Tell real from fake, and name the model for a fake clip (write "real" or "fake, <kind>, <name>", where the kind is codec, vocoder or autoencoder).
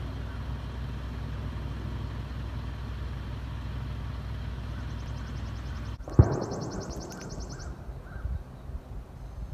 real